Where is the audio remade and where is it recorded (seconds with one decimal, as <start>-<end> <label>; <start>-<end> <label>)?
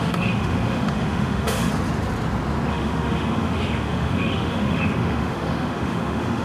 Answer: 0.0-1.7 remade; 1.7-2.7 recorded; 2.7-6.4 remade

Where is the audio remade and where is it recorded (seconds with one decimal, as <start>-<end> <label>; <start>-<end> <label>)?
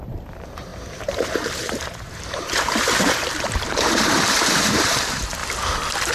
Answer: 0.0-5.4 remade; 5.4-6.1 recorded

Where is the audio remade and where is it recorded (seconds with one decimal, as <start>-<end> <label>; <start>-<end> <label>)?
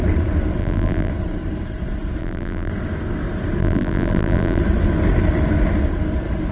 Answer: 0.0-0.6 recorded; 0.6-1.1 remade; 1.1-2.2 recorded; 2.2-2.7 remade; 2.7-3.6 recorded; 3.6-4.6 remade; 4.6-6.5 recorded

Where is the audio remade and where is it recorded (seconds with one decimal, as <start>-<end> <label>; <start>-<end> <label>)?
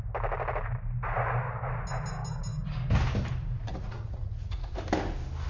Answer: 0.0-3.7 recorded; 3.7-4.8 remade; 4.8-5.5 recorded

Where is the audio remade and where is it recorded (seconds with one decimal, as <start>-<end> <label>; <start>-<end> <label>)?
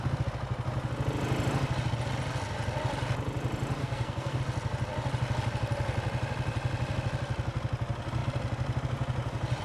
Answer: 0.0-3.8 recorded; 3.8-4.4 remade; 4.4-9.6 recorded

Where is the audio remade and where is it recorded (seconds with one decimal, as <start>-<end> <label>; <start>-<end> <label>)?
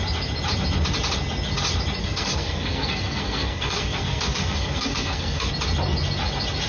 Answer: 0.0-2.0 recorded; 2.0-5.5 remade; 5.5-6.7 recorded